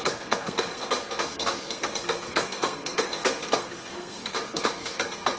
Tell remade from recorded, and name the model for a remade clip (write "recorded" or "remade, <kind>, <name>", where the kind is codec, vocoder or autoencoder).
remade, codec, SNAC